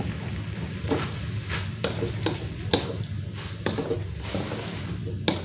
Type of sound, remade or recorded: recorded